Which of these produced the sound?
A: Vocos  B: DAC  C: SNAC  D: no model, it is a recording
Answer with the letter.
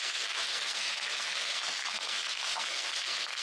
C